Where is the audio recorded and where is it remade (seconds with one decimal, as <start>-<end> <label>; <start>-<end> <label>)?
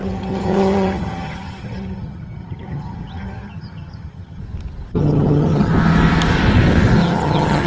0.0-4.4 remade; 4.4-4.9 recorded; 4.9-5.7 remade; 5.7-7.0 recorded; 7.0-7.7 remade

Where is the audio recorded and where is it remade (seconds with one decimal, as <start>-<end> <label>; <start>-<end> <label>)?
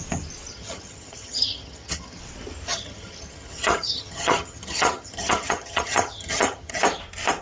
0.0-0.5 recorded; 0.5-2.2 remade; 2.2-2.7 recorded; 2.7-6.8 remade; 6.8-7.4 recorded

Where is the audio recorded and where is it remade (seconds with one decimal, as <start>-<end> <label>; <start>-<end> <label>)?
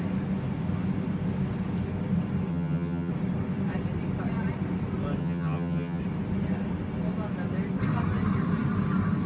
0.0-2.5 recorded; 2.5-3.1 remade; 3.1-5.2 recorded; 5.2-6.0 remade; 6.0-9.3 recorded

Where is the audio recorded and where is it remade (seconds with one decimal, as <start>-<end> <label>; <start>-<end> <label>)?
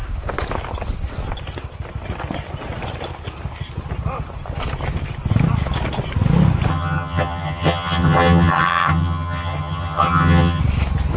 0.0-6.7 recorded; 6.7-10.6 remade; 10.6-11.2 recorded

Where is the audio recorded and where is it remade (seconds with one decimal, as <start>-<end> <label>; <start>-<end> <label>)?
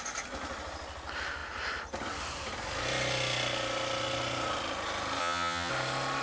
0.0-5.2 recorded; 5.2-5.7 remade; 5.7-6.2 recorded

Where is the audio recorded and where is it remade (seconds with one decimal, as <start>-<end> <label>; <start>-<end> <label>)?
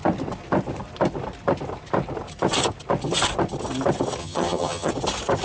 0.0-4.2 recorded; 4.2-4.9 remade; 4.9-5.4 recorded